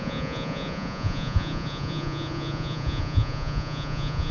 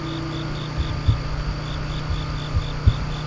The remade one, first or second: first